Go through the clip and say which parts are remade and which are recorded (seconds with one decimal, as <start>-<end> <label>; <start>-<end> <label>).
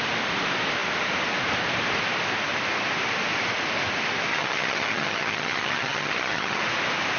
0.0-4.3 recorded; 4.3-6.6 remade; 6.6-7.2 recorded